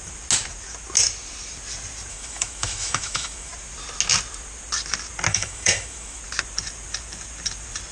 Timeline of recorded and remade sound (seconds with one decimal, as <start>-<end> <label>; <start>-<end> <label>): 0.0-2.1 recorded; 2.1-3.5 remade; 3.5-5.3 recorded; 5.3-6.2 remade; 6.2-7.9 recorded

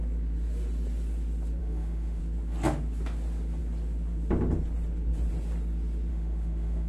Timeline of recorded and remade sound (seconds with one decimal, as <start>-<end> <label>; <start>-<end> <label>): 0.0-1.6 recorded; 1.6-2.2 remade; 2.2-6.1 recorded; 6.1-6.9 remade

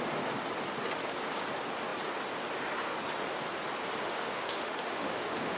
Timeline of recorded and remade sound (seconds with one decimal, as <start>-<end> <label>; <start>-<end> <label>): 0.0-4.0 recorded; 4.0-5.6 remade

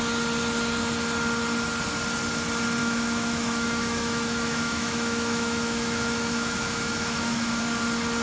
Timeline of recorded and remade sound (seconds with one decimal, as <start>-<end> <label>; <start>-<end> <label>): 0.0-2.8 recorded; 2.8-7.6 remade; 7.6-8.2 recorded

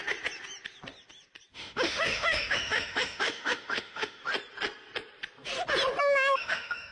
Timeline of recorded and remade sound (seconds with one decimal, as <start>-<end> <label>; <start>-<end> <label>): 0.0-1.5 recorded; 1.5-4.2 remade; 4.2-6.0 recorded; 6.0-6.9 remade

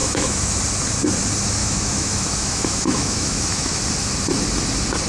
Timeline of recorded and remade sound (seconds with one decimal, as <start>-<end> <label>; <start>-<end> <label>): 0.0-0.6 remade; 0.6-1.6 recorded; 1.6-3.8 remade; 3.8-5.1 recorded

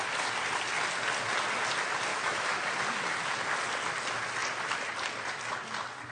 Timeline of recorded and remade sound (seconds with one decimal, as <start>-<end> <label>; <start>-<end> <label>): 0.0-2.1 recorded; 2.1-2.6 remade; 2.6-6.1 recorded

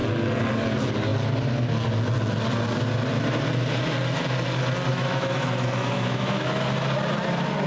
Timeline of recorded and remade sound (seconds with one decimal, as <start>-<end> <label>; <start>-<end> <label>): 0.0-4.9 recorded; 4.9-6.6 remade; 6.6-7.7 recorded